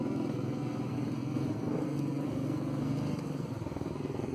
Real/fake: fake